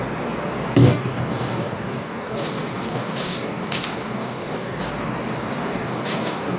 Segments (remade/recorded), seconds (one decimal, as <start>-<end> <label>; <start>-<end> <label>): 0.0-0.8 recorded; 0.8-4.8 remade; 4.8-5.6 recorded; 5.6-6.6 remade